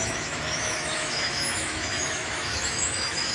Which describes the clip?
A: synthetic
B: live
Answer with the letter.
A